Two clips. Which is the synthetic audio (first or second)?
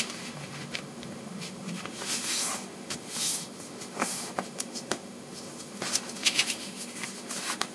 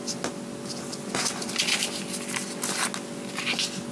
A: first